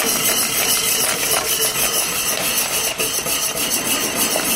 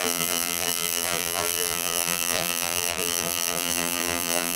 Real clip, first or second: first